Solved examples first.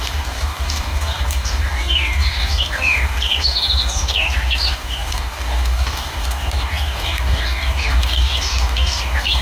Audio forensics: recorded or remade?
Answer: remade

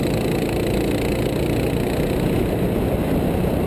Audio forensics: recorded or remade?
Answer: recorded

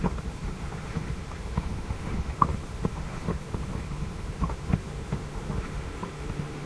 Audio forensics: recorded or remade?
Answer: remade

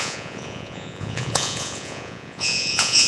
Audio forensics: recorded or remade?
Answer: remade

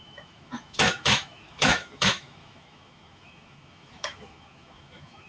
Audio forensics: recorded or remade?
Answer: remade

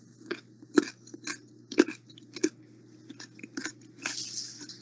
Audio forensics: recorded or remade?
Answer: recorded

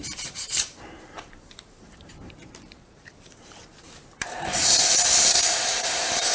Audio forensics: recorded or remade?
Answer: remade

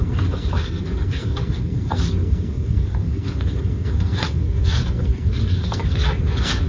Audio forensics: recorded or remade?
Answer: remade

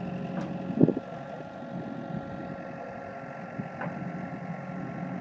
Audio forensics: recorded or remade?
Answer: recorded